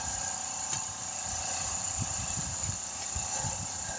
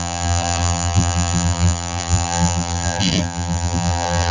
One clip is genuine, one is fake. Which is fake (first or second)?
second